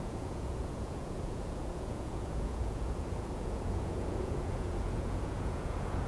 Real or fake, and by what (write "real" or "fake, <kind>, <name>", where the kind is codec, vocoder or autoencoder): fake, vocoder, Vocos